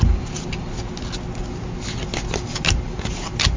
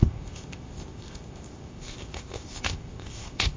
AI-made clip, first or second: second